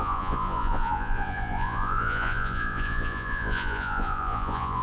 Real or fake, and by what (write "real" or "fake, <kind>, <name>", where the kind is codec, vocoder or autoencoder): fake, vocoder, Vocos